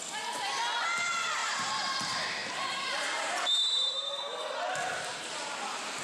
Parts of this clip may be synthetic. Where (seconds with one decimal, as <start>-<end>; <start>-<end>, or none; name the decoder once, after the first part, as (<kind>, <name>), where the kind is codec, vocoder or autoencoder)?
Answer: 1.4-1.9 (vocoder, BigVGAN v2); 2.4-4.1